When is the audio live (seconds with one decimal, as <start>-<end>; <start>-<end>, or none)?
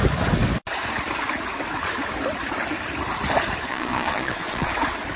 0.0-3.7; 4.7-5.2